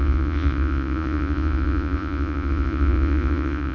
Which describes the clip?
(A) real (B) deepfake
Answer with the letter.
B